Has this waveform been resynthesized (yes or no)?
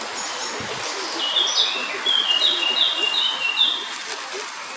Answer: no